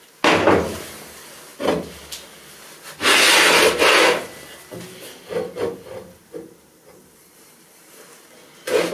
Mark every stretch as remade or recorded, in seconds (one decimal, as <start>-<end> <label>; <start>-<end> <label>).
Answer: 0.0-8.9 recorded